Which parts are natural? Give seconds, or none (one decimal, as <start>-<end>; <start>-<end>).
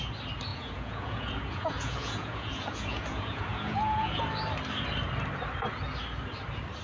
0.0-0.5; 4.2-6.8